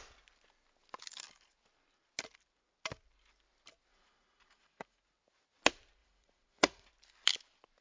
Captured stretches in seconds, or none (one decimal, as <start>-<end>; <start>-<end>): 0.0-3.9; 5.0-6.0; 6.9-7.8